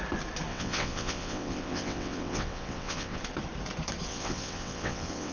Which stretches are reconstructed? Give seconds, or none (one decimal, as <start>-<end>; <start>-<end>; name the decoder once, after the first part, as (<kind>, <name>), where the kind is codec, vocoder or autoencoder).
0.5-3.2 (vocoder, WaveNeXt); 4.1-5.3